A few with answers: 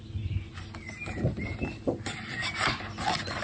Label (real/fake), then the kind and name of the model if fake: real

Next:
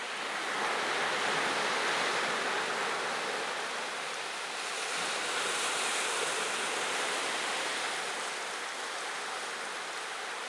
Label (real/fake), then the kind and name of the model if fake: real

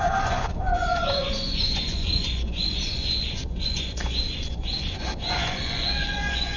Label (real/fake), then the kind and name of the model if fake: fake, vocoder, Vocos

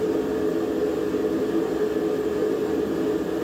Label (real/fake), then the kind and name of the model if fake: real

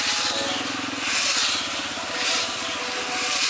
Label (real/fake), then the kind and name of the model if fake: real